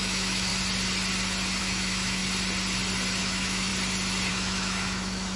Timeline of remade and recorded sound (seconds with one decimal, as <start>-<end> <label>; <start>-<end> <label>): 0.0-0.5 remade; 0.5-1.6 recorded; 1.6-2.2 remade; 2.2-3.2 recorded; 3.2-3.7 remade; 3.7-4.3 recorded; 4.3-5.4 remade